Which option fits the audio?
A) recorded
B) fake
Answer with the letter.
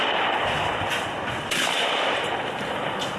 B